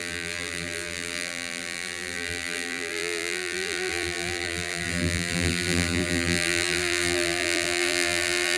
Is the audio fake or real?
fake